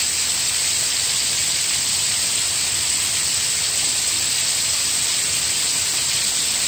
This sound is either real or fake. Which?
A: real